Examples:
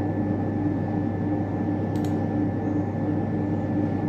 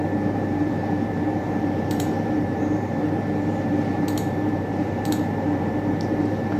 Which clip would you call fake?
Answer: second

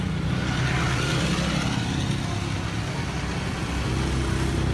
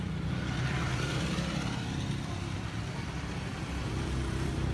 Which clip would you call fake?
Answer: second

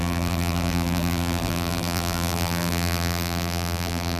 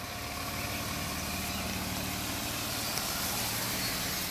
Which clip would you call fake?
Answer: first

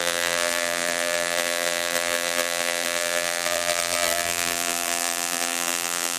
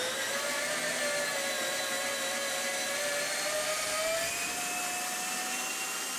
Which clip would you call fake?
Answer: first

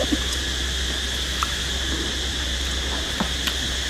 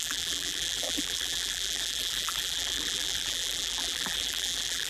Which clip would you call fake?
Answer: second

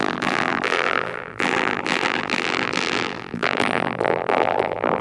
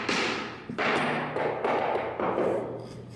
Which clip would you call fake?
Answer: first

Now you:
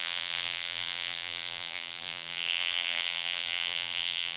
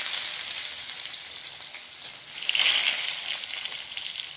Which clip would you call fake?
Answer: first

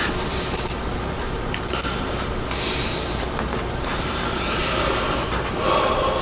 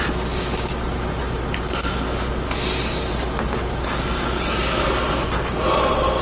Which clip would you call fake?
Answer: first